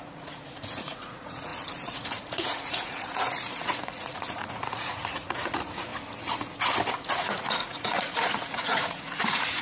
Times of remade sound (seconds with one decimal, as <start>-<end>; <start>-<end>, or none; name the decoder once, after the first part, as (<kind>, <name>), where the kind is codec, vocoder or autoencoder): 0.0-5.9 (vocoder, Vocos); 6.9-9.6